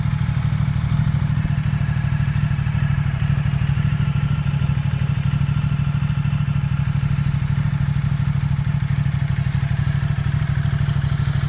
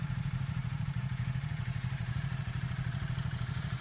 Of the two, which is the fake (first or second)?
second